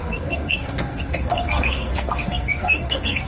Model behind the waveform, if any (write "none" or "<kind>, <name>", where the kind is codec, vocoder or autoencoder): codec, SNAC